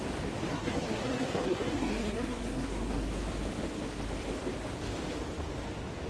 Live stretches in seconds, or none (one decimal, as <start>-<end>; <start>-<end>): 0.0-0.5; 3.1-6.1